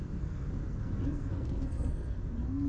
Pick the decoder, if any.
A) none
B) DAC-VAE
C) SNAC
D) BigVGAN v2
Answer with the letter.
C